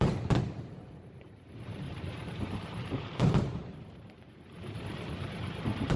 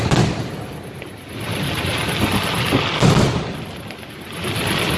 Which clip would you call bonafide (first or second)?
second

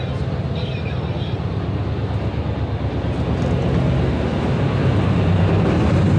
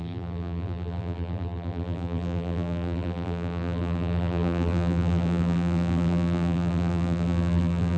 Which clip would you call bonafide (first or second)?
first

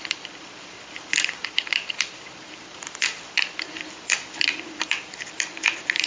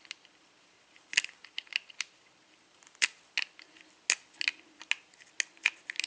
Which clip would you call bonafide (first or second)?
second